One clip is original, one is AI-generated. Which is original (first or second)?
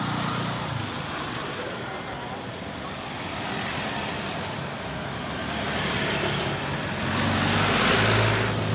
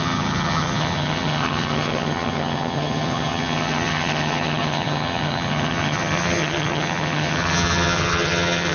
first